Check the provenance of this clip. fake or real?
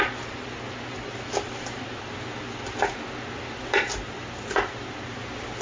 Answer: real